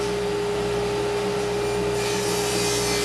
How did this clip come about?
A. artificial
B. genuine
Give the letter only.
B